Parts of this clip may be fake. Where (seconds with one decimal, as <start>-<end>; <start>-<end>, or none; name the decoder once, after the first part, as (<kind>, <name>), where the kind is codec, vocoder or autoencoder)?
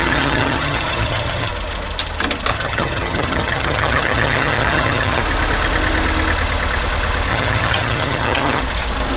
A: 0.0-1.5 (vocoder, HiFi-GAN); 2.5-5.2; 7.3-8.6